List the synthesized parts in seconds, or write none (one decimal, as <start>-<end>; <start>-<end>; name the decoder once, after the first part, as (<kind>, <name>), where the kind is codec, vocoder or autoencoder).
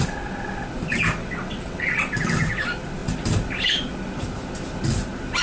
1.2-2.1 (vocoder, WaveNeXt)